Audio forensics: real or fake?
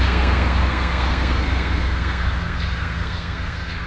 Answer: fake